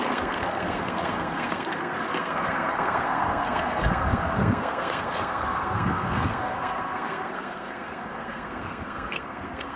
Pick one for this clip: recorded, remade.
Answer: remade